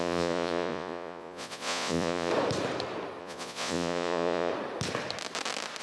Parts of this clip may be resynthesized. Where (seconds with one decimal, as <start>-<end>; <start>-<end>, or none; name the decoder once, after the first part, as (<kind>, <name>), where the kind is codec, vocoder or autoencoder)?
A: 0.0-2.3 (vocoder, Vocos); 3.2-4.5

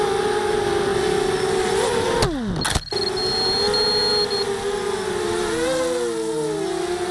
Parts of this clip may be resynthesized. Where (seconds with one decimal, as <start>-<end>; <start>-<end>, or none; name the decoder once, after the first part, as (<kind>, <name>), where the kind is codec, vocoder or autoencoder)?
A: none

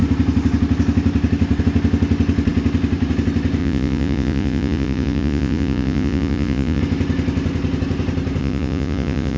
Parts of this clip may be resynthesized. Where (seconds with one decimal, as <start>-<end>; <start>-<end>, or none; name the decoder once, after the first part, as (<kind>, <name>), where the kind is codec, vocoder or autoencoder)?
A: 3.6-6.8 (vocoder, Vocos); 8.4-9.4

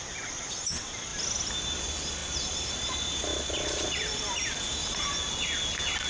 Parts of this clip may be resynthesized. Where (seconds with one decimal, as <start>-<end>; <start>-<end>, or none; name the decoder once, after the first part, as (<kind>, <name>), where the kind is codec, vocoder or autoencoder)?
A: 3.3-4.2 (vocoder, Vocos)

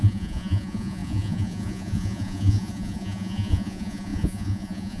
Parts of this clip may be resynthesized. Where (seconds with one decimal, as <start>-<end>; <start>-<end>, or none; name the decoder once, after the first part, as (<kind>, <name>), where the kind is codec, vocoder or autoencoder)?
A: 0.0-5.0 (vocoder, Vocos)

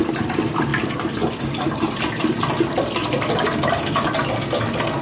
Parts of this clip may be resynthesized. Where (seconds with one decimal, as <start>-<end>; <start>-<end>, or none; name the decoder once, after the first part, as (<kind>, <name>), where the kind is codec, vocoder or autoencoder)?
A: none

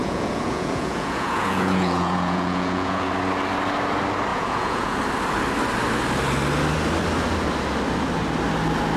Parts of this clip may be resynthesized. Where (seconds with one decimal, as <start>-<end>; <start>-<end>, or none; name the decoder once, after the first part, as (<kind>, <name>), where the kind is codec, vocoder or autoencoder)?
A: 0.0-3.1 (vocoder, Vocos); 4.3-5.0